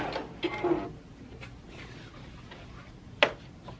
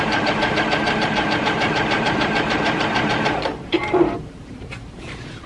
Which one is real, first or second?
first